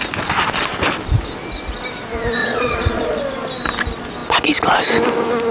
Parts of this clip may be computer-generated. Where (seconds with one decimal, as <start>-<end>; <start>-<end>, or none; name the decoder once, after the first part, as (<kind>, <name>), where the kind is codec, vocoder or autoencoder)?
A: 2.4-3.2 (vocoder, Vocos)